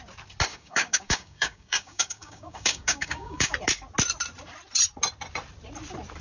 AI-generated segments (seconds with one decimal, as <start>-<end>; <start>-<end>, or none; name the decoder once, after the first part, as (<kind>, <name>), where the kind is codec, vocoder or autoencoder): 0.5-3.5 (codec, DAC)